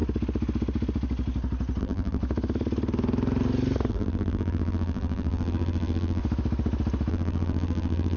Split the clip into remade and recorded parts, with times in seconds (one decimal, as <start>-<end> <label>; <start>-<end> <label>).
0.0-1.8 recorded; 1.8-2.2 remade; 2.2-3.9 recorded; 3.9-6.2 remade; 6.2-7.1 recorded; 7.1-8.2 remade